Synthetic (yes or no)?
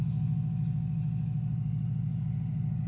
no